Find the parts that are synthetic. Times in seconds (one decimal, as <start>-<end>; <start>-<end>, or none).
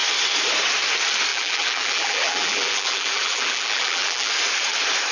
1.3-4.3